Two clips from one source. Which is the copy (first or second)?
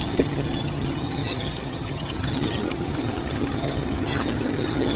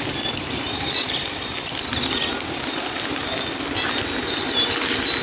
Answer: first